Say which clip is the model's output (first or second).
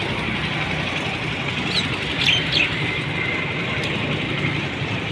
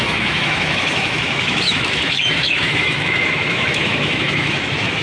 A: second